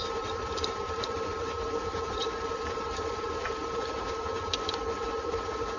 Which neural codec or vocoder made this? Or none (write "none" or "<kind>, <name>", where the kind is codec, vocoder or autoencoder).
vocoder, BigVGAN v2